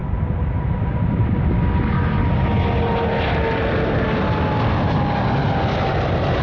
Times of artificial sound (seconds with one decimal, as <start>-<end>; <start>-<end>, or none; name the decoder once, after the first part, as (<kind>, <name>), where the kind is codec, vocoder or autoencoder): none